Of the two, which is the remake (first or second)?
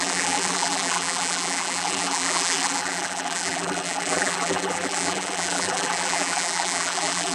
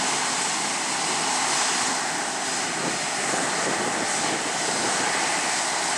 first